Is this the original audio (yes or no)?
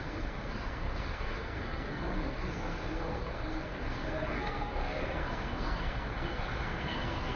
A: no